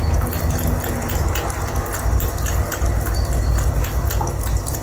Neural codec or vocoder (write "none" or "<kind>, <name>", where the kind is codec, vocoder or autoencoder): none